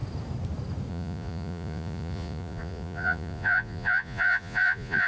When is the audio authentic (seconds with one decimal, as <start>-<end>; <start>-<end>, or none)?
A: 0.0-0.9